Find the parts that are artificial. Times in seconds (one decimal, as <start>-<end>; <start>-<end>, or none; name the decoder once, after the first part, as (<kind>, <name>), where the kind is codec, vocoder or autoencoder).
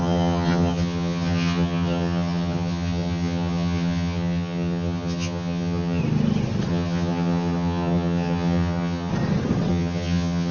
0.0-6.0 (vocoder, HiFi-GAN); 6.7-9.1; 9.7-10.5